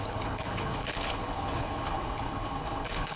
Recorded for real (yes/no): no